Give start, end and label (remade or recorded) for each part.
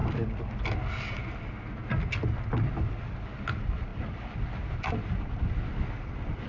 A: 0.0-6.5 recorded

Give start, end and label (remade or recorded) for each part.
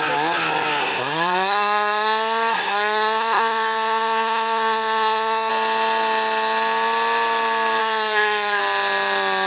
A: 0.0-0.8 recorded; 0.8-5.5 remade; 5.5-7.8 recorded; 7.8-8.6 remade; 8.6-9.5 recorded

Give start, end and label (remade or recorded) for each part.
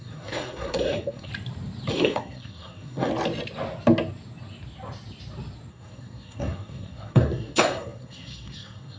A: 0.0-1.3 remade; 1.3-1.9 recorded; 1.9-3.1 remade; 3.1-5.7 recorded; 5.7-9.0 remade